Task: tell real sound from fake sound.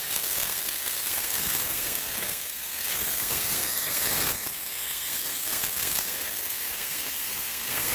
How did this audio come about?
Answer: fake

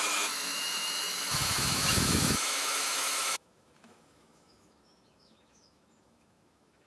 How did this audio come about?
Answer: fake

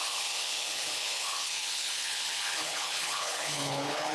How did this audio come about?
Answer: fake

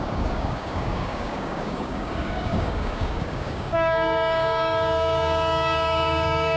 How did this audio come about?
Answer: fake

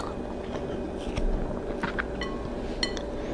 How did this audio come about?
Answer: real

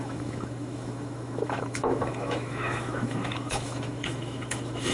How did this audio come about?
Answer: fake